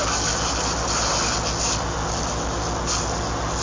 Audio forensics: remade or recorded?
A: recorded